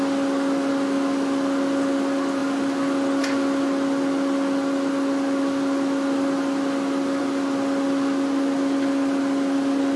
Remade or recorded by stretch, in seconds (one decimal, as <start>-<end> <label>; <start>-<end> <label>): 0.0-10.0 recorded